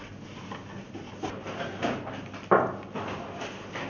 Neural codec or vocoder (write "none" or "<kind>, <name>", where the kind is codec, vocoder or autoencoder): none